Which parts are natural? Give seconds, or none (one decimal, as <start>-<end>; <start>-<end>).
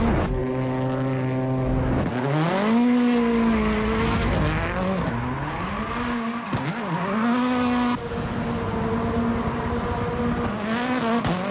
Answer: 0.0-11.5